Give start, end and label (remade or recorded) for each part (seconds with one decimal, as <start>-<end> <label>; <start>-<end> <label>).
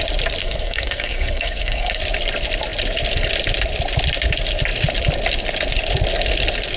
0.0-0.4 recorded; 0.4-2.0 remade; 2.0-6.8 recorded